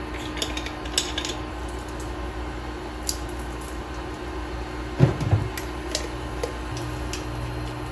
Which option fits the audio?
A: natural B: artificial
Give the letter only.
A